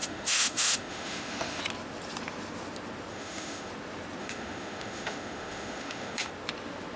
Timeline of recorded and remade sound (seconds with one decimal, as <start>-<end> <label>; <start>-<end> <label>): 0.0-1.6 remade; 1.6-3.1 recorded; 3.1-3.7 remade; 3.7-4.2 recorded; 4.2-6.3 remade; 6.3-7.0 recorded